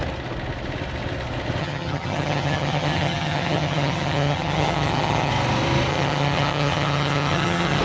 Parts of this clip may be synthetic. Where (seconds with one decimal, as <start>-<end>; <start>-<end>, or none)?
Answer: 1.6-5.3; 5.9-7.8